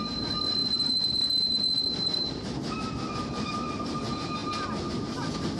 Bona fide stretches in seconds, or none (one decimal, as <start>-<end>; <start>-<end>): 0.0-0.6; 4.0-5.6